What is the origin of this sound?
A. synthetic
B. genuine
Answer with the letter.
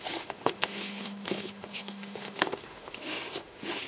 A